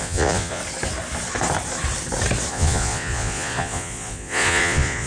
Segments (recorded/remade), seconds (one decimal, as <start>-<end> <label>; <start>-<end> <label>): 0.0-0.6 remade; 0.6-2.5 recorded; 2.5-5.1 remade